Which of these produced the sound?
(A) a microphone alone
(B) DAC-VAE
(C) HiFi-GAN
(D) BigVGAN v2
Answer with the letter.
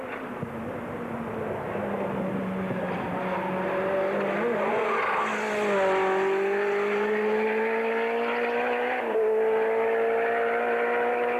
A